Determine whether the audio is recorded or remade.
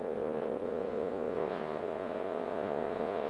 remade